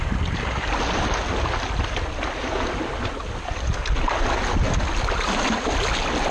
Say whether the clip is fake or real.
real